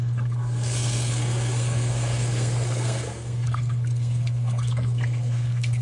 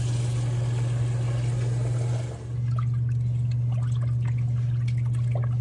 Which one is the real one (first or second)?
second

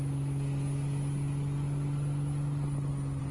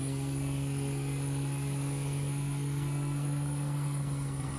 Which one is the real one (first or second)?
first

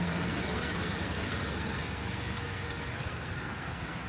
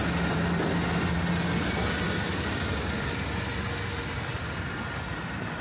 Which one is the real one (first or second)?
second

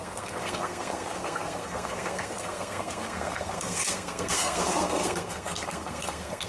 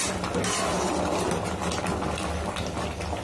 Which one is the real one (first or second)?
second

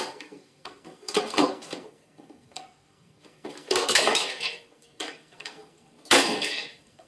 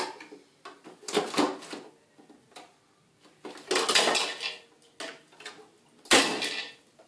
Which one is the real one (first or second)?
second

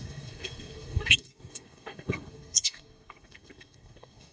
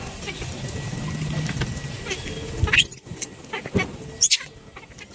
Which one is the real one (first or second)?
second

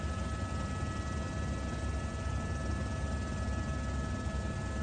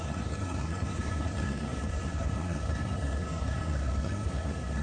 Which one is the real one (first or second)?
first